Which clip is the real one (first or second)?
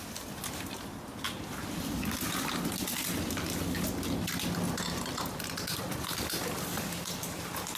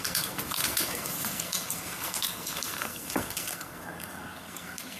first